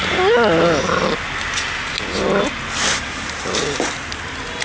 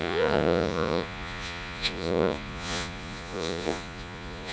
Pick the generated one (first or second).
second